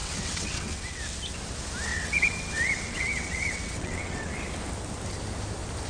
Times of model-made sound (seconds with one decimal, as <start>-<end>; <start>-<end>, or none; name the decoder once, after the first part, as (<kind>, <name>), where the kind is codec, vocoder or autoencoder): 0.0-1.0 (vocoder, WaveNeXt); 1.9-4.3